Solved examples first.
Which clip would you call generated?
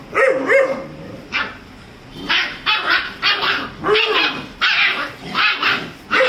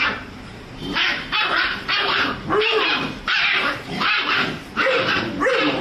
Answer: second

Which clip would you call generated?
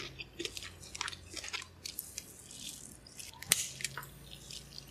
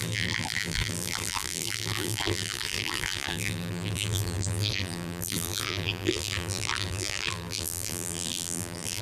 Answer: second